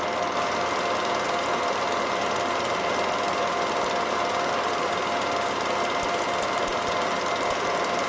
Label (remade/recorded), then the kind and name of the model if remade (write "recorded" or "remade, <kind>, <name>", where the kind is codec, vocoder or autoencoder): recorded